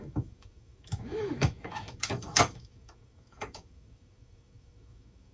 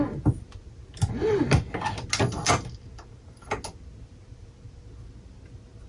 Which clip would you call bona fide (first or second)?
second